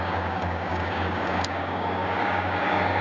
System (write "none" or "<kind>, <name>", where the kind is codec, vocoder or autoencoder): codec, DAC